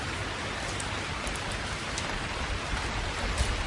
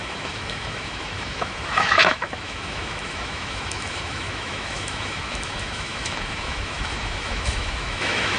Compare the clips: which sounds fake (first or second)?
second